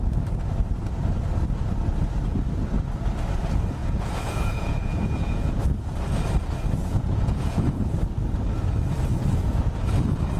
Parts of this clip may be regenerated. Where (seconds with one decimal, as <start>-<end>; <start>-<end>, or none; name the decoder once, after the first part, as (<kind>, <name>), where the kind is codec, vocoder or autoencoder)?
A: 3.8-5.6 (vocoder, Vocos); 6.8-7.8

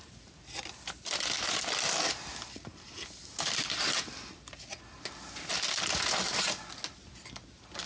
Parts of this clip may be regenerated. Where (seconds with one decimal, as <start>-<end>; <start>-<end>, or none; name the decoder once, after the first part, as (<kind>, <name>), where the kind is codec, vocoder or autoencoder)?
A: none

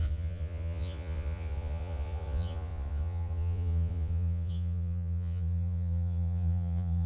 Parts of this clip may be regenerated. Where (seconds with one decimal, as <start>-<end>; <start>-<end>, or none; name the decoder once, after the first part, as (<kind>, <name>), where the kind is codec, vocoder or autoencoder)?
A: 0.0-7.1 (vocoder, Vocos)

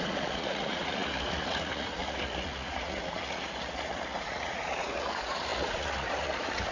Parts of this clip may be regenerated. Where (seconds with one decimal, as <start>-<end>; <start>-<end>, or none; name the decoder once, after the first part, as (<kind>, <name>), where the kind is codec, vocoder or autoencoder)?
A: 0.0-6.7 (vocoder, Vocos)